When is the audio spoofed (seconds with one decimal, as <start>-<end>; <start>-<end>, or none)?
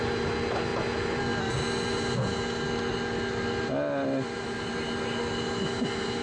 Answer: none